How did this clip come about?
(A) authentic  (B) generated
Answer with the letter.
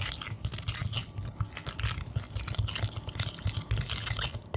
A